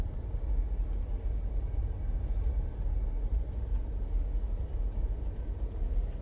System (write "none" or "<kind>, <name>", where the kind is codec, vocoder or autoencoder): none